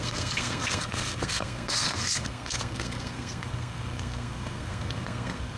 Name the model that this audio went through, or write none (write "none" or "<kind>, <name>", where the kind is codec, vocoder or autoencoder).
codec, SNAC